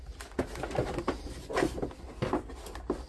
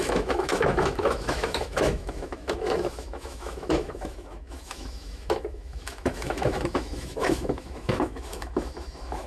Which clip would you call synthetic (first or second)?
second